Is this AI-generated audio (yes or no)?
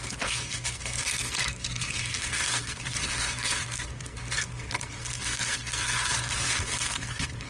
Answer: yes